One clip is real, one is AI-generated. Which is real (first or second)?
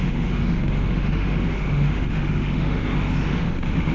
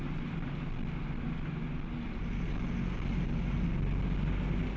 second